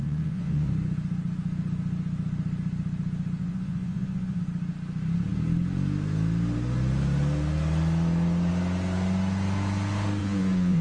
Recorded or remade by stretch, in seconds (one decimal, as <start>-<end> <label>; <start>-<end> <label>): 0.0-0.7 remade; 0.7-3.4 recorded; 3.4-4.4 remade; 4.4-10.2 recorded; 10.2-10.8 remade